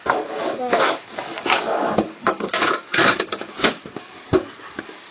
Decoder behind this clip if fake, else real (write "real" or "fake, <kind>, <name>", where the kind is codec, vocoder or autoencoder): fake, codec, DAC